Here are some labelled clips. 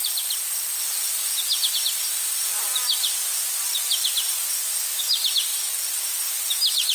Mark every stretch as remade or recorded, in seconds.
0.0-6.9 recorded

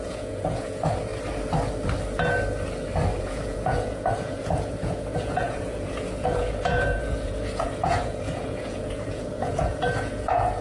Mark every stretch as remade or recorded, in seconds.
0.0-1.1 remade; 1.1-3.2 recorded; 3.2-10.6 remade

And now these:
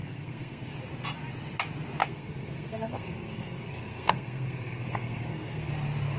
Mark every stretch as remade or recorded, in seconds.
0.0-0.7 remade; 0.7-2.0 recorded; 2.0-5.7 remade; 5.7-6.2 recorded

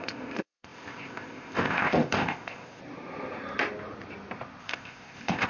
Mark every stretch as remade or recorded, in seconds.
0.0-2.8 remade; 2.8-4.6 recorded; 4.6-5.5 remade